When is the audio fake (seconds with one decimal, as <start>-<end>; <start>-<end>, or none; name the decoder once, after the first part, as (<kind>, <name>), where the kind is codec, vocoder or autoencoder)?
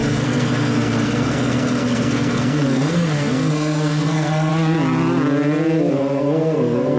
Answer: 0.0-4.5 (codec, SNAC); 5.9-7.0